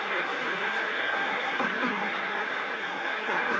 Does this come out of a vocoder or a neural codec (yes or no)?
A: yes